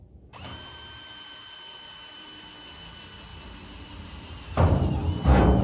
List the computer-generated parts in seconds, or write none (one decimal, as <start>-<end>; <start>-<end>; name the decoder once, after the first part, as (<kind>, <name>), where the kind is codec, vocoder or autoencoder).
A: 0.5-2.5 (vocoder, BigVGAN v2); 3.3-5.1